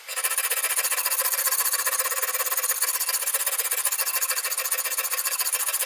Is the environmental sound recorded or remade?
recorded